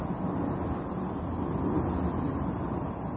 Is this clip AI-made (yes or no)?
no